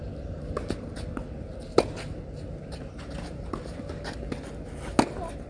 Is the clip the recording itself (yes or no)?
yes